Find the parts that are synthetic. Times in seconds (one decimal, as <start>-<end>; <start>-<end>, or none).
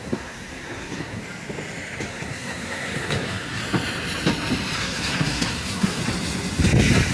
0.0-1.2; 2.1-3.6; 4.8-6.0